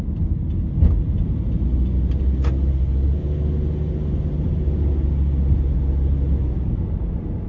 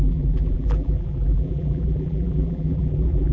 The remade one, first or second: second